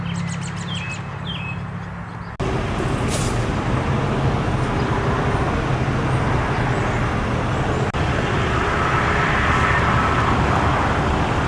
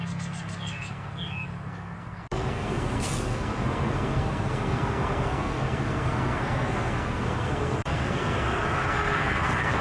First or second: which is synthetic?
second